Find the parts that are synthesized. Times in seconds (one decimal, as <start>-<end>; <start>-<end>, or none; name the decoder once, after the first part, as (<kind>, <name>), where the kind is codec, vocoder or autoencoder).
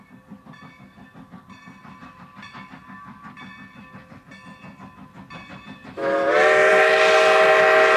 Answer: none